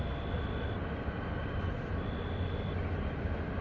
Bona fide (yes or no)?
yes